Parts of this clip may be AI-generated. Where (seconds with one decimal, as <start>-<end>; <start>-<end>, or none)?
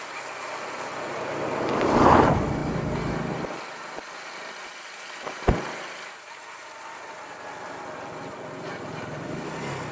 none